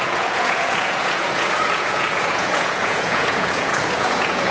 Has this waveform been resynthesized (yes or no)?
yes